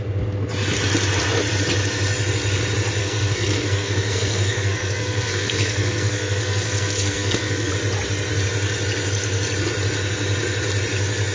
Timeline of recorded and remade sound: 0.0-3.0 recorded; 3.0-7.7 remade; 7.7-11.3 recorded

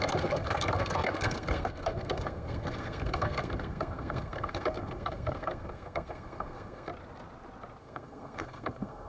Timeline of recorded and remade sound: 0.0-6.9 remade; 6.9-7.8 recorded; 7.8-9.1 remade